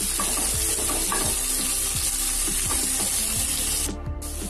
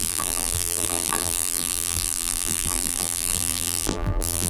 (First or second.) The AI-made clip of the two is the second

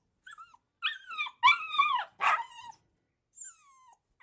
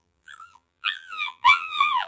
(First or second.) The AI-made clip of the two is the second